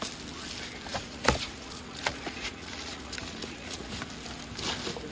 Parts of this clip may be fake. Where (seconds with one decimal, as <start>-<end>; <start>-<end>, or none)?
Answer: 0.9-3.9